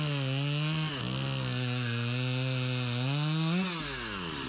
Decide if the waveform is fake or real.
real